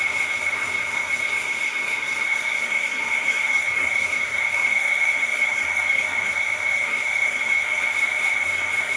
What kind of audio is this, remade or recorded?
remade